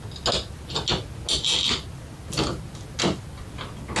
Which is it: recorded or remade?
recorded